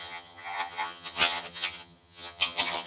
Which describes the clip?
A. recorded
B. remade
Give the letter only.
B